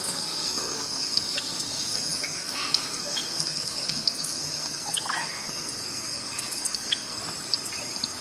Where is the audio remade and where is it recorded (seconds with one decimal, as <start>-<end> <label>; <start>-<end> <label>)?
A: 0.0-7.2 remade; 7.2-8.2 recorded

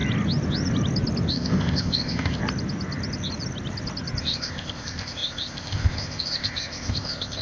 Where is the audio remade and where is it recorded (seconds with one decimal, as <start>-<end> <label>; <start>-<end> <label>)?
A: 0.0-1.3 recorded; 1.3-2.4 remade; 2.4-4.2 recorded; 4.2-7.4 remade

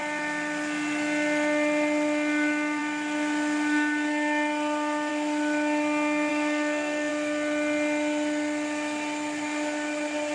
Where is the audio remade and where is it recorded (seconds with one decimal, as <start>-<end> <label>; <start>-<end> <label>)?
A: 0.0-6.3 recorded; 6.3-7.1 remade; 7.1-10.3 recorded

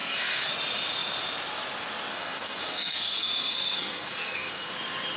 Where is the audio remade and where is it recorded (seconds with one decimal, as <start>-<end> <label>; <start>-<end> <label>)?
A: 0.0-0.5 remade; 0.5-2.1 recorded; 2.1-4.7 remade; 4.7-5.2 recorded

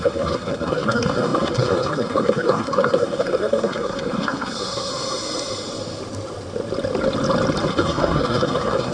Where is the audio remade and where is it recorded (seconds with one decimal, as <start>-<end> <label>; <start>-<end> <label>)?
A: 0.0-4.9 remade; 4.9-7.7 recorded; 7.7-8.9 remade

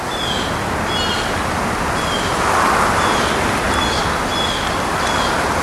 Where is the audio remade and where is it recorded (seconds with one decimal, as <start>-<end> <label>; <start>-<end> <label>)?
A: 0.0-5.6 recorded

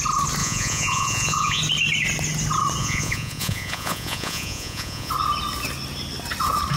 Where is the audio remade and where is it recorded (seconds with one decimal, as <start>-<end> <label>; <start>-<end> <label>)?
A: 0.0-0.4 recorded; 0.4-1.6 remade; 1.6-2.8 recorded; 2.8-5.1 remade; 5.1-6.8 recorded